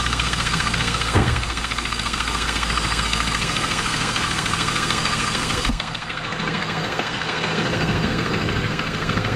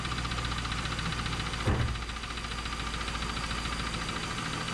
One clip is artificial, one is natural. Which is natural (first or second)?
second